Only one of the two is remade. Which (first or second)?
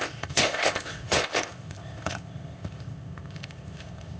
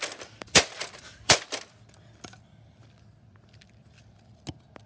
first